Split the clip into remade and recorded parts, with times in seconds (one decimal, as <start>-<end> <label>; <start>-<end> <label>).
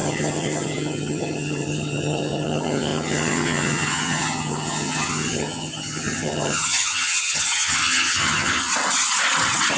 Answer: 0.0-8.7 remade; 8.7-9.8 recorded